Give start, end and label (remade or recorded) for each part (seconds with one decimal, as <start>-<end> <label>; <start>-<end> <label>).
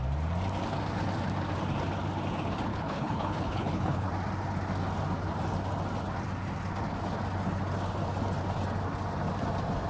0.0-2.7 recorded; 2.7-4.1 remade; 4.1-9.9 recorded